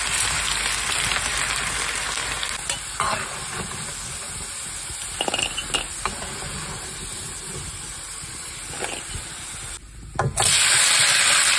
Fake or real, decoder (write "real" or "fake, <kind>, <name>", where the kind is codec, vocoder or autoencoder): real